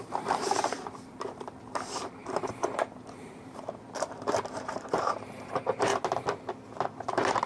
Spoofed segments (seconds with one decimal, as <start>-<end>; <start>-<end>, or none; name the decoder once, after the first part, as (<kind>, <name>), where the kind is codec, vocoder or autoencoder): 0.0-5.9 (vocoder, BigVGAN v2); 7.0-7.5